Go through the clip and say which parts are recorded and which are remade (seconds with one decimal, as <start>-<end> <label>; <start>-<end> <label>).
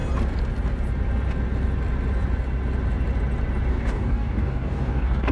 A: 0.0-3.7 recorded; 3.7-5.3 remade